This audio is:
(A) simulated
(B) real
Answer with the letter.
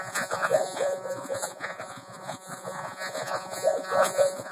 A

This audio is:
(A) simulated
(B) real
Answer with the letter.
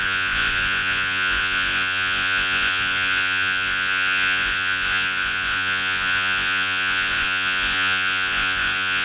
A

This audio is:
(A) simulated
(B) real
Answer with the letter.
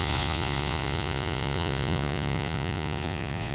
A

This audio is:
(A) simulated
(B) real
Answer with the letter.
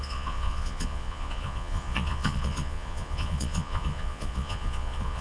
A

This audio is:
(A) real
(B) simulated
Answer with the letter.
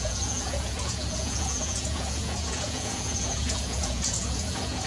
B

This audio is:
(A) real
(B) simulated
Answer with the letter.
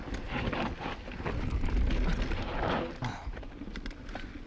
A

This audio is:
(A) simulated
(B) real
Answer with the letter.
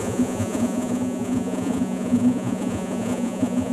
A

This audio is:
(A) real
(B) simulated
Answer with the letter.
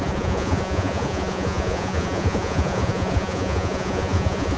B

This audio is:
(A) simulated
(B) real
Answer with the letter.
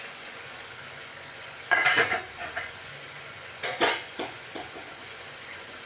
A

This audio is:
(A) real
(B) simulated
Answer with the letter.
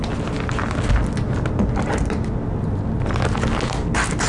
A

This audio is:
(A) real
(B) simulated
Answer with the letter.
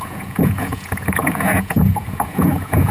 B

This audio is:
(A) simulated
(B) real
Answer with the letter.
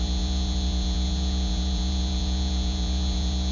A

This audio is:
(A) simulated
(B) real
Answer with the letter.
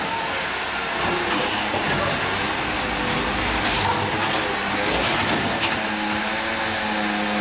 B